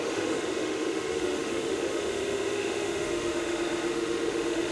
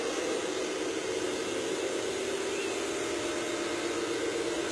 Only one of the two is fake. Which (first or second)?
first